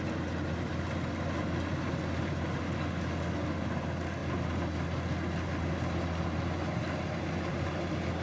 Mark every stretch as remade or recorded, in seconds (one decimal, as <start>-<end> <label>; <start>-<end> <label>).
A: 0.0-8.2 recorded